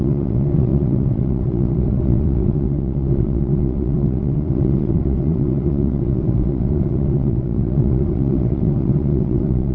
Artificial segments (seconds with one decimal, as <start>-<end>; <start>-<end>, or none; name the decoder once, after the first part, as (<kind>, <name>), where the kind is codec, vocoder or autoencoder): 0.0-9.7 (vocoder, WaveNeXt)